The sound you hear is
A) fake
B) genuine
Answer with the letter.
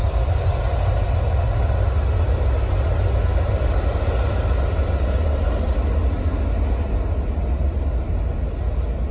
B